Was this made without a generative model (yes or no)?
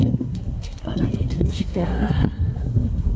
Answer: no